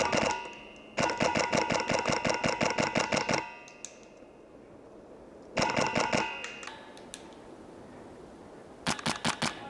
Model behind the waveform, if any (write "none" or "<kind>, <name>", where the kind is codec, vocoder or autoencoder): none